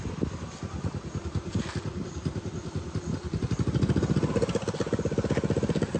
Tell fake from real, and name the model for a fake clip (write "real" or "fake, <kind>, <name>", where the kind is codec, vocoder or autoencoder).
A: real